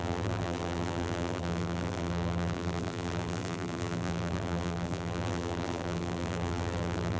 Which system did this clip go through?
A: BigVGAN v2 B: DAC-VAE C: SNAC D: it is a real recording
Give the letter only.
A